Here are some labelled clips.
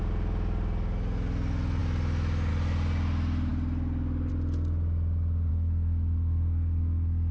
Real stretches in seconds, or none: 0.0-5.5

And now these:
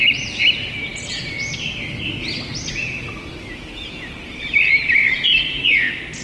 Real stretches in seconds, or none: 0.0-4.3; 5.6-6.2

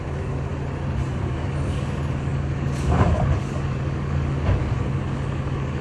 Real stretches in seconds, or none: 0.5-1.2

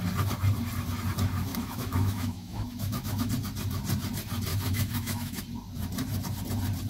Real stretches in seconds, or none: 0.0-1.5; 3.3-4.5; 5.4-6.9

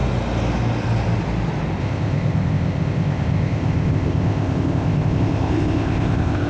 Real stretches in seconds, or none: 0.0-1.8

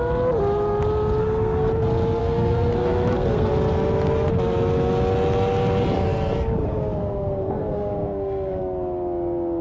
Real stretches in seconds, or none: 0.0-1.2; 1.7-2.2; 3.5-6.6; 8.6-9.6

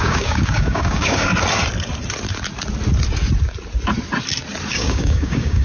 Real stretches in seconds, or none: 1.3-4.7